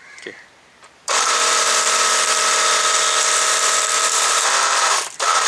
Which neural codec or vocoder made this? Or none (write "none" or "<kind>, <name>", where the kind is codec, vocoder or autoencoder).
vocoder, BigVGAN v2